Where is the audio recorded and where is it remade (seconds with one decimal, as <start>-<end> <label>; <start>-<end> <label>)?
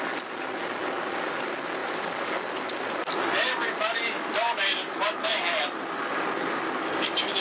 0.0-7.4 recorded